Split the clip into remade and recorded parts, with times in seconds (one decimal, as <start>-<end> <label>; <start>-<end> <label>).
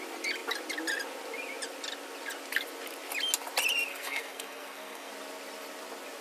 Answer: 0.0-3.9 recorded; 3.9-5.1 remade; 5.1-6.2 recorded